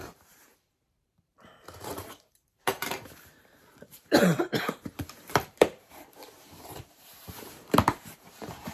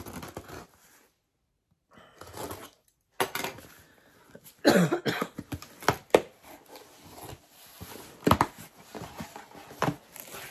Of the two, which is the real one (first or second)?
second